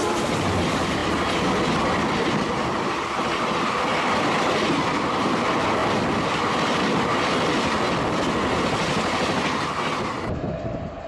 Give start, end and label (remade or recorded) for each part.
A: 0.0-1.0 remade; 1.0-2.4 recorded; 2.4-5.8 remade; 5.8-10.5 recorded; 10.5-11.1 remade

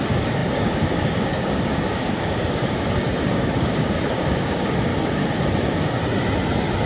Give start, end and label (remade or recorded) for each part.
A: 0.0-4.9 remade; 4.9-6.9 recorded